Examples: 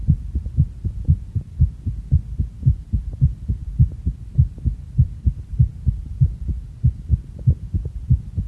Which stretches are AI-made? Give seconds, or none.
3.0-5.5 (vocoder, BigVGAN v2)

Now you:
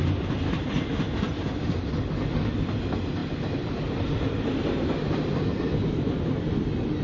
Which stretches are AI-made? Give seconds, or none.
3.2-4.5 (vocoder, BigVGAN v2)

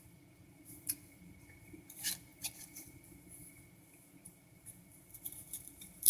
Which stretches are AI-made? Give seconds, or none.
0.0-6.1 (vocoder, BigVGAN v2)

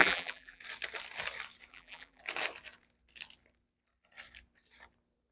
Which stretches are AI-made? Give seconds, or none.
0.0-0.6 (vocoder, BigVGAN v2); 1.7-2.2

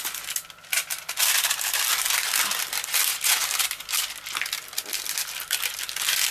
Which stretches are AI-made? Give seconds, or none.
none

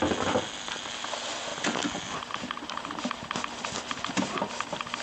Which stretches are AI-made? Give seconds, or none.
none

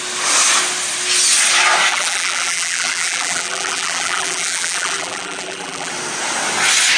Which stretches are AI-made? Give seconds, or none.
1.9-5.9 (vocoder, BigVGAN v2)

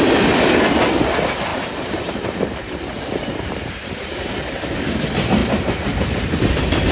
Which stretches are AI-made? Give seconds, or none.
1.5-4.8 (vocoder, BigVGAN v2); 5.4-6.4